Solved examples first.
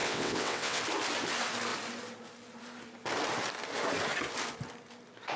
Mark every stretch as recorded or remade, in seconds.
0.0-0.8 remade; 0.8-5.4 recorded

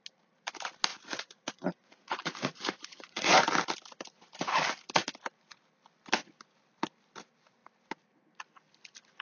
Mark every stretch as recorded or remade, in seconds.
0.0-0.9 recorded; 0.9-3.4 remade; 3.4-9.2 recorded

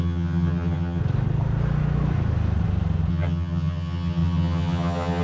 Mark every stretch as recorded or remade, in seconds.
0.0-1.0 remade; 1.0-3.1 recorded; 3.1-5.2 remade